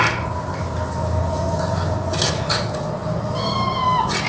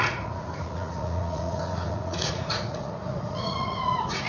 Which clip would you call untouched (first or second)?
first